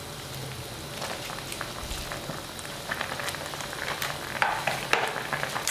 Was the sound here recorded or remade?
recorded